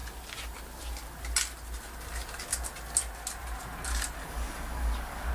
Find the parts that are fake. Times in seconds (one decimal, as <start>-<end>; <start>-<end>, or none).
4.2-5.3